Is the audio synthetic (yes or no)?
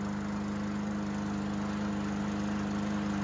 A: no